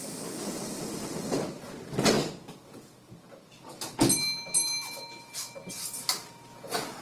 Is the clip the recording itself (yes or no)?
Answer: yes